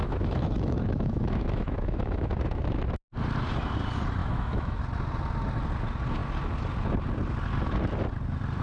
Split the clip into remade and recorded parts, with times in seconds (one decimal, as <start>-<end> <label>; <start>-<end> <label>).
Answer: 0.0-2.8 remade; 2.8-4.2 recorded; 4.2-4.8 remade; 4.8-8.6 recorded